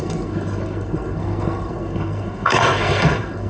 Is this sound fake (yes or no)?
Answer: yes